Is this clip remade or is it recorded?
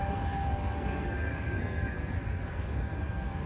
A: remade